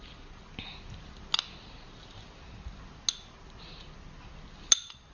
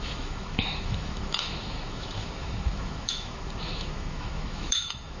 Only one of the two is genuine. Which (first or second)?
first